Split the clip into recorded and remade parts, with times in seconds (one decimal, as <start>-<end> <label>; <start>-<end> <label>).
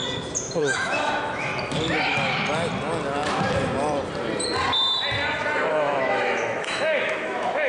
0.0-0.6 recorded; 0.6-1.5 remade; 1.5-5.7 recorded; 5.7-7.7 remade